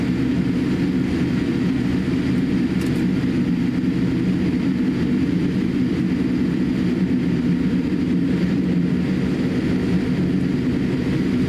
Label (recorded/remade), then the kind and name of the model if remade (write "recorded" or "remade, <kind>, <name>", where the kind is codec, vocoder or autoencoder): recorded